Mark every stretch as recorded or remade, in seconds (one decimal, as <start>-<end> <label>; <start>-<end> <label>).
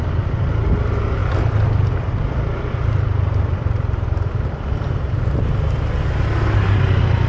0.0-1.2 recorded; 1.2-5.3 remade; 5.3-7.3 recorded